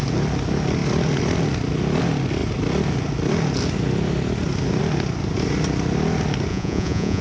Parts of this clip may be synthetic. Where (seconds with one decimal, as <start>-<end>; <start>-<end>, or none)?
6.5-7.2